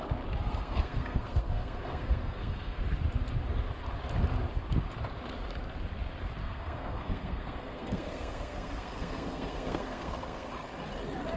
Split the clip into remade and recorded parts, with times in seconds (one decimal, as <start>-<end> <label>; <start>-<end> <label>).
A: 0.0-0.5 recorded; 0.5-2.8 remade; 2.8-6.4 recorded; 6.4-10.5 remade; 10.5-11.4 recorded